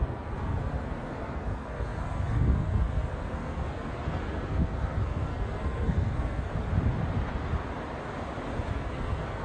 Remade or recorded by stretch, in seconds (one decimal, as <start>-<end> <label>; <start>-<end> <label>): 0.0-6.5 remade; 6.5-8.7 recorded; 8.7-9.4 remade